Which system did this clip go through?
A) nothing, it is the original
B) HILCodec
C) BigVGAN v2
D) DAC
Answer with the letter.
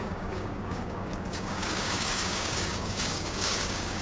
D